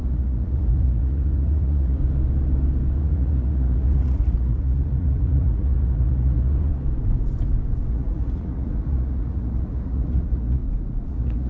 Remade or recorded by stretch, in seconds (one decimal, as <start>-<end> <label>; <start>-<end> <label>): 0.0-2.0 remade; 2.0-3.0 recorded; 3.0-6.7 remade; 6.7-7.9 recorded; 7.9-10.6 remade; 10.6-11.1 recorded; 11.1-11.5 remade